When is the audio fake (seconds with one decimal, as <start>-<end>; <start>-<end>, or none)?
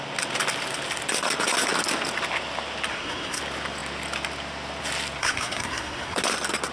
2.9-3.4; 5.2-6.2